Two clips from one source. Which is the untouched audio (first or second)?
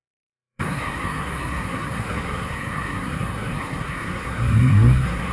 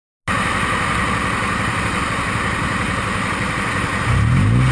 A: second